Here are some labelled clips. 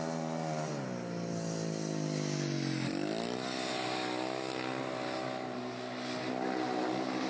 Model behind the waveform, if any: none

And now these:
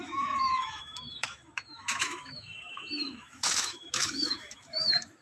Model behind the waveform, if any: autoencoder, DAC-VAE